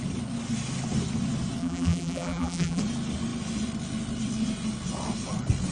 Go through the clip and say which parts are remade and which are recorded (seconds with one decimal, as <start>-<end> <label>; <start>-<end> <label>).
0.0-1.6 recorded; 1.6-2.8 remade; 2.8-5.7 recorded